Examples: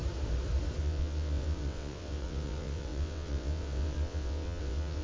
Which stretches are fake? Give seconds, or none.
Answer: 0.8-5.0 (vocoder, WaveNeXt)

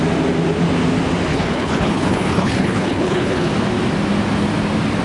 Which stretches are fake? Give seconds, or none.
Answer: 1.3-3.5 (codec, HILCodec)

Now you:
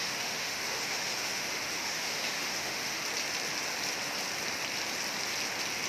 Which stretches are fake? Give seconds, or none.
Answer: 0.0-3.0 (autoencoder, DAC-VAE)

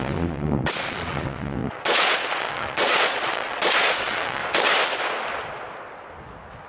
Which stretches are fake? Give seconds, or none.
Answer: 0.0-4.4 (vocoder, Vocos)